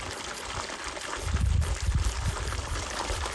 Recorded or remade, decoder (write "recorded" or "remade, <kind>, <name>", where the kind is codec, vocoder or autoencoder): recorded